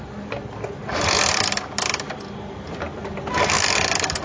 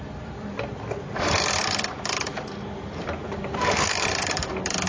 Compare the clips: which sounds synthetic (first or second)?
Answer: second